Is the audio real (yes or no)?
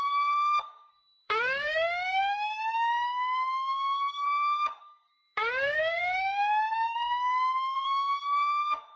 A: no